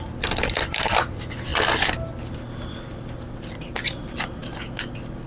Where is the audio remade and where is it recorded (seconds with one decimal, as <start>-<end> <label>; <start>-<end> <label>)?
0.0-1.5 remade; 1.5-3.3 recorded; 3.3-4.4 remade; 4.4-5.3 recorded